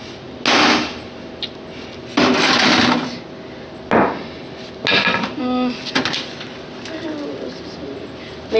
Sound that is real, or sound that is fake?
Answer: real